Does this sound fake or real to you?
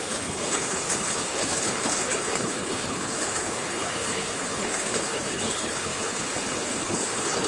fake